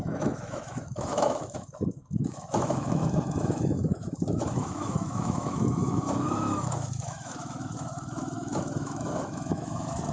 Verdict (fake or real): fake